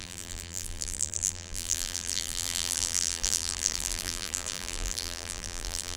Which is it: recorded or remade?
remade